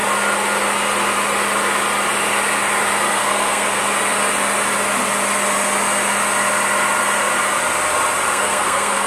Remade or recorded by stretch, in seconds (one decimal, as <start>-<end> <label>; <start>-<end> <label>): 0.0-3.2 recorded; 3.2-3.8 remade; 3.8-8.3 recorded; 8.3-9.1 remade